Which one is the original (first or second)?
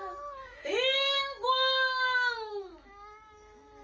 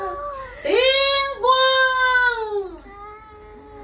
second